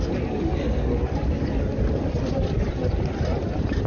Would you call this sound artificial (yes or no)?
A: no